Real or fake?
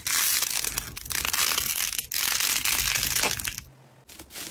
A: real